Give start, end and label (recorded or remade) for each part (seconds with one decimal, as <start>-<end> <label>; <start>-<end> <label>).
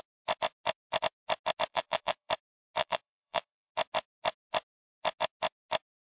0.0-1.7 recorded; 1.7-2.3 remade; 2.3-2.8 recorded; 2.8-3.7 remade; 3.7-6.0 recorded